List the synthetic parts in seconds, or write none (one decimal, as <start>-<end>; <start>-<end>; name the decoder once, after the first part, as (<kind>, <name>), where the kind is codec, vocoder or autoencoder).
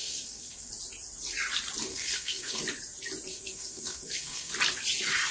0.0-0.7 (codec, SNAC); 1.9-2.6; 3.3-4.5